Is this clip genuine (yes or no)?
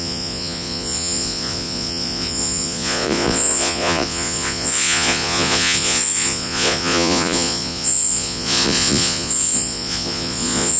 no